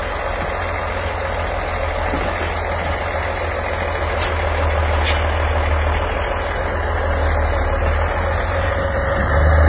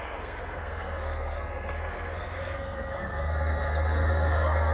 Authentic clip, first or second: first